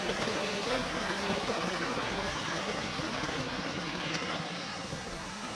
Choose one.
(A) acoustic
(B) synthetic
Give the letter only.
B